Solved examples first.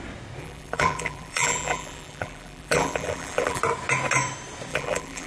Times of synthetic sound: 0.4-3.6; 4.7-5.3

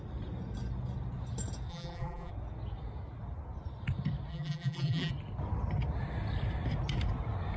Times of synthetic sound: 1.7-2.3; 4.3-5.1